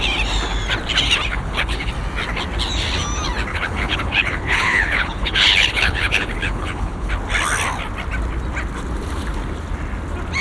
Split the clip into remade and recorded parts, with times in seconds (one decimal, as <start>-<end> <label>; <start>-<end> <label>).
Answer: 0.0-1.3 recorded; 1.3-1.9 remade; 1.9-3.5 recorded; 3.5-7.1 remade; 7.1-10.4 recorded